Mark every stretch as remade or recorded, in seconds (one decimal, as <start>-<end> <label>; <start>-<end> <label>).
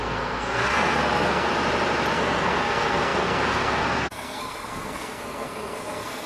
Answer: 0.0-1.5 remade; 1.5-2.1 recorded; 2.1-6.3 remade